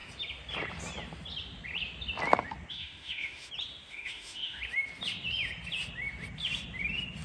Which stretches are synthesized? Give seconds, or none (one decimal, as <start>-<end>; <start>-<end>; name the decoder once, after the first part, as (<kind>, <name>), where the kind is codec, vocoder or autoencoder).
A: 2.7-3.5 (autoencoder, DAC-VAE); 3.9-4.6